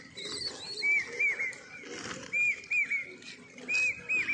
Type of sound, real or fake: real